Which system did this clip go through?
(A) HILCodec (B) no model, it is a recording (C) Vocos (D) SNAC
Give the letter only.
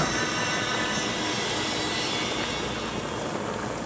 B